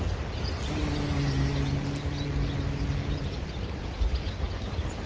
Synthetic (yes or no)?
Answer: no